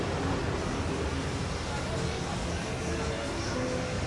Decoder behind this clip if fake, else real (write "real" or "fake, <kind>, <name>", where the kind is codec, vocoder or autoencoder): real